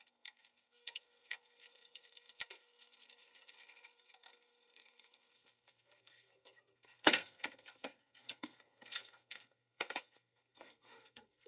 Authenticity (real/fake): fake